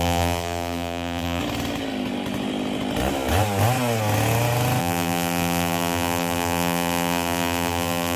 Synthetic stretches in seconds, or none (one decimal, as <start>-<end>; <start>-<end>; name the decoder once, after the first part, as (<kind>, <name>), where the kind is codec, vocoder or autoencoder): 0.0-1.4 (vocoder, BigVGAN v2); 4.8-8.2